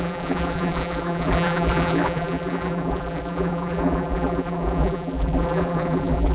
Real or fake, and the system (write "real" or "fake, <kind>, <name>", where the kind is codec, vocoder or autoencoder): fake, vocoder, BigVGAN v2